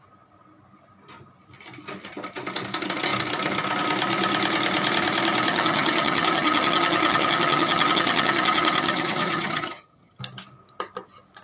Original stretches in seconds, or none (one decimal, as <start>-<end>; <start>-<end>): 0.0-5.5; 10.2-11.4